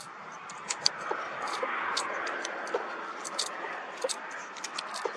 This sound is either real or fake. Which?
real